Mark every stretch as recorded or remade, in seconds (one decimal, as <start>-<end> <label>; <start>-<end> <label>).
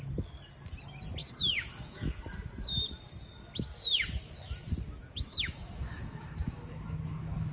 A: 0.0-1.2 recorded; 1.2-2.2 remade; 2.2-5.0 recorded; 5.0-7.5 remade